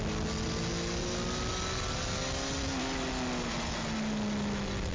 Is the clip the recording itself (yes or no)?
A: yes